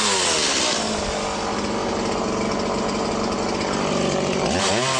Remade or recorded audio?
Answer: recorded